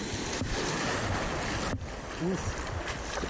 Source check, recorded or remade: recorded